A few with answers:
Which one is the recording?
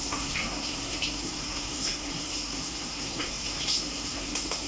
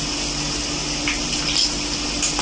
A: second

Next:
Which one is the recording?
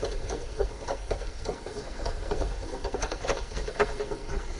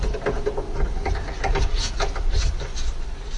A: second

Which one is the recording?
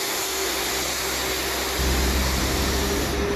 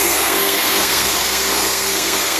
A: first